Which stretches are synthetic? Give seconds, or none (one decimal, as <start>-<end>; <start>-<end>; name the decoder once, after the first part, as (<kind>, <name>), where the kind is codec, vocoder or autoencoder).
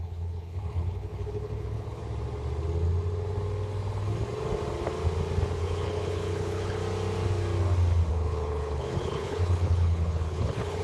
0.0-2.0 (codec, HILCodec); 5.6-6.8; 8.1-10.8